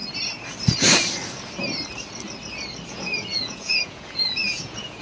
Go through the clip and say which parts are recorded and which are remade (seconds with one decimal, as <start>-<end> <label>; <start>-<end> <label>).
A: 0.0-2.9 recorded; 2.9-5.0 remade